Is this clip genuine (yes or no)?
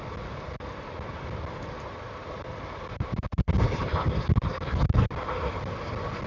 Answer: yes